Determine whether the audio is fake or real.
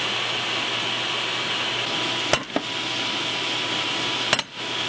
real